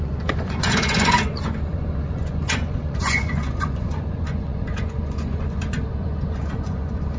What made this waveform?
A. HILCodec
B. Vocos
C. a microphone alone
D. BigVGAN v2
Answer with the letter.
B